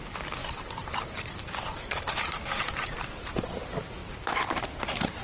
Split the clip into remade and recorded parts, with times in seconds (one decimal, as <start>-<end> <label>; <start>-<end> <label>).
0.0-0.4 recorded; 0.4-3.5 remade; 3.5-4.0 recorded; 4.0-5.2 remade